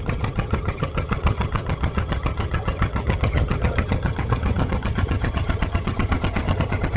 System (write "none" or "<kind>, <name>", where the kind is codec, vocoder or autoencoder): vocoder, HiFi-GAN